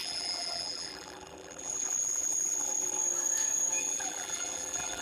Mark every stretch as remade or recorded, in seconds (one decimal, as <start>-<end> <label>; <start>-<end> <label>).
0.0-3.0 remade; 3.0-3.8 recorded; 3.8-5.0 remade